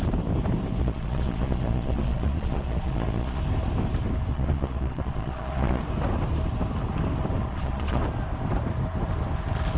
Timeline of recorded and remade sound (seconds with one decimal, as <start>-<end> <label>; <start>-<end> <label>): 0.0-0.8 recorded; 0.8-3.4 remade; 3.4-4.3 recorded; 4.3-5.8 remade; 5.8-7.4 recorded; 7.4-8.0 remade; 8.0-9.8 recorded